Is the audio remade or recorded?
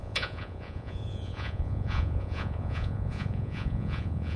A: remade